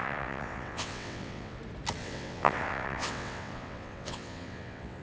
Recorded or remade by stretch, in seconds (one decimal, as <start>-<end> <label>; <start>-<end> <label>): 0.0-1.6 remade; 1.6-2.0 recorded; 2.0-5.0 remade